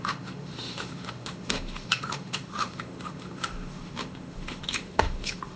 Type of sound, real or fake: fake